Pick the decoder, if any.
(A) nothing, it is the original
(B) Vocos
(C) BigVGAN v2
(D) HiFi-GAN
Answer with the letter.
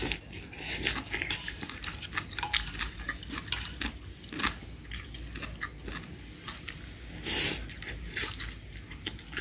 A